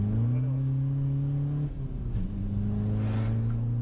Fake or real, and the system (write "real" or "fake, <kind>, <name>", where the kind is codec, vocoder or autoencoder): real